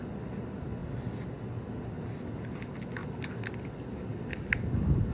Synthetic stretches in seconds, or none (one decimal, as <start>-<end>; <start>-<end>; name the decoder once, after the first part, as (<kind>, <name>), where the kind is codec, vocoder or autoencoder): none